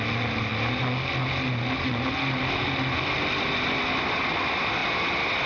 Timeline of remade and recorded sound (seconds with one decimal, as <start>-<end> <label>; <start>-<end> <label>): 0.0-5.5 recorded